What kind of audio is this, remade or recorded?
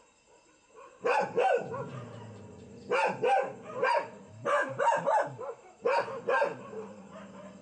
recorded